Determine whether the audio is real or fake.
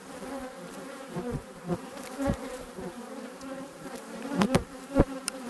fake